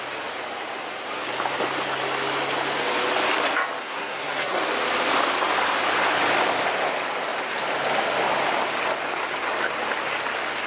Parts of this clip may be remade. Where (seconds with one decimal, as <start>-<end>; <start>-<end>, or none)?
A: 3.8-4.6